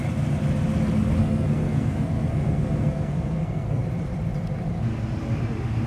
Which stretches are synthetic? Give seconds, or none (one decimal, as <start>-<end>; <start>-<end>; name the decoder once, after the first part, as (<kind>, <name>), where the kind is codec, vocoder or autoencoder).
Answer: 1.2-3.8 (codec, SNAC)